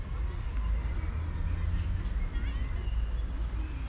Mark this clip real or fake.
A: real